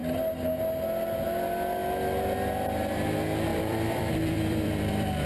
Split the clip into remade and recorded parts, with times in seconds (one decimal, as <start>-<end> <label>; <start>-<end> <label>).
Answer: 0.0-3.5 recorded; 3.5-5.3 remade